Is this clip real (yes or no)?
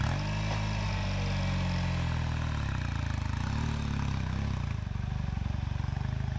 yes